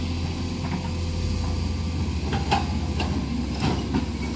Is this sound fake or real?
real